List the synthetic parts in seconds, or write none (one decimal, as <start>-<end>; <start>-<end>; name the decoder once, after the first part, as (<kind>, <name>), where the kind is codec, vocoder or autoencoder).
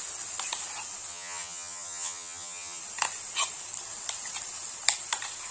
1.1-2.8 (vocoder, HiFi-GAN)